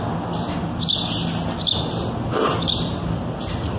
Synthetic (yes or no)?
no